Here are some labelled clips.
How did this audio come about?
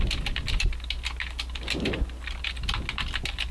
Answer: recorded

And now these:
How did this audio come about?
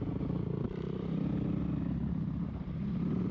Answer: recorded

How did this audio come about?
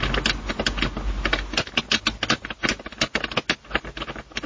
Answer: recorded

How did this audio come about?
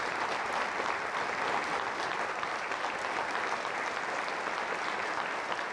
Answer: recorded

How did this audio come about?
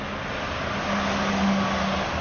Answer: recorded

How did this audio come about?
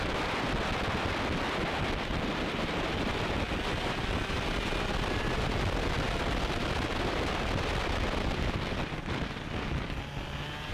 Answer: recorded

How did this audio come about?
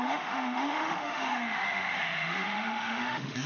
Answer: remade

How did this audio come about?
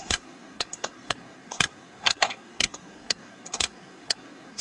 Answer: remade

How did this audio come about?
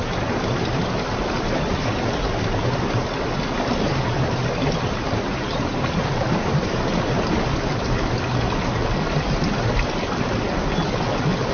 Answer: recorded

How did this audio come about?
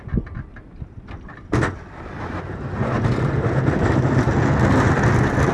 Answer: recorded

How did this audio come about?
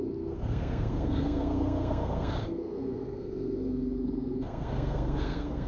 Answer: remade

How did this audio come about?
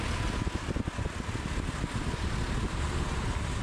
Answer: recorded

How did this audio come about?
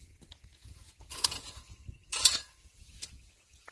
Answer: remade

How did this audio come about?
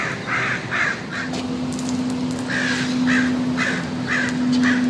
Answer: recorded